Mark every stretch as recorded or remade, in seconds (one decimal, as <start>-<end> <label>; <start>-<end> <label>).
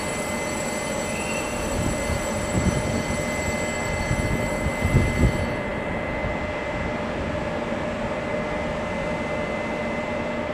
0.0-10.5 recorded